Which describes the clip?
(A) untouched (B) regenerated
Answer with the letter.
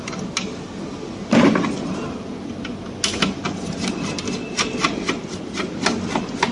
A